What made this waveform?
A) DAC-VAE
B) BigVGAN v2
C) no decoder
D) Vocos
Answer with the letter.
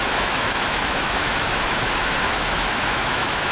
A